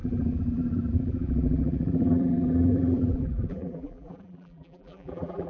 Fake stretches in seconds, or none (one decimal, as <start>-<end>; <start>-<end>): 0.0-5.5